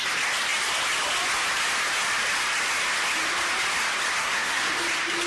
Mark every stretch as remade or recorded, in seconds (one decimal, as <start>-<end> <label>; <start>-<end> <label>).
0.0-4.2 recorded; 4.2-4.7 remade; 4.7-5.3 recorded